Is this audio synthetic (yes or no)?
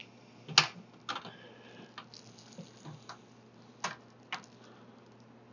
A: no